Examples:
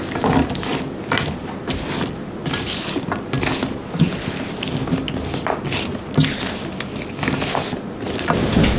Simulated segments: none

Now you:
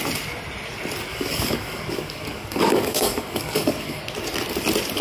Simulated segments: 1.1-4.0 (codec, DAC)

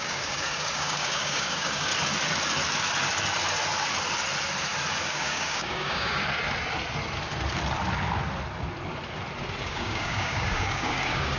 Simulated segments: 0.0-1.9 (codec, DAC); 5.0-6.2; 9.6-11.4

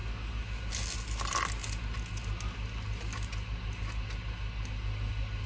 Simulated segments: none

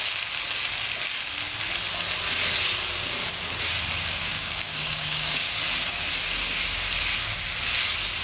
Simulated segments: 4.2-5.5 (codec, DAC)